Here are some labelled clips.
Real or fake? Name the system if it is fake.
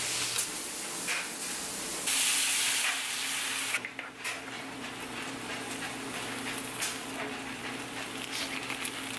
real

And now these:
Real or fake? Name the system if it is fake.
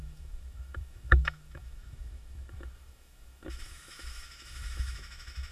fake, autoencoder, DAC-VAE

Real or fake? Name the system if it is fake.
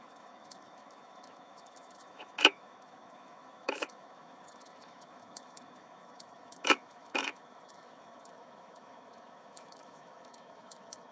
fake, autoencoder, DAC-VAE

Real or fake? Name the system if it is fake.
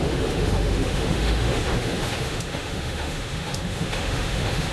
fake, autoencoder, DAC-VAE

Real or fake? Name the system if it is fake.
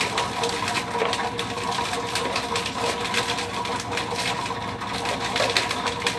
real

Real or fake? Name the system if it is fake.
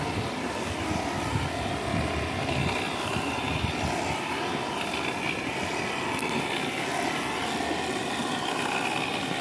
real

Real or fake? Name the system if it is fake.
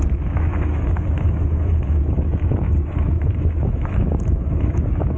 fake, autoencoder, DAC-VAE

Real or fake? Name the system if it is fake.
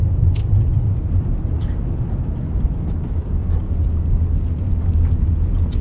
real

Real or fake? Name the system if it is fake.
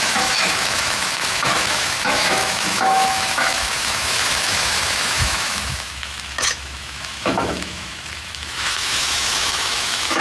fake, autoencoder, DAC-VAE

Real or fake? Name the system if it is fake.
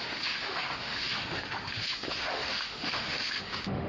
fake, autoencoder, DAC-VAE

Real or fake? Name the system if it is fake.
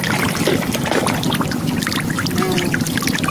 real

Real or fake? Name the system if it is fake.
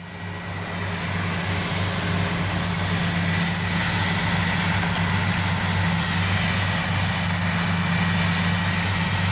real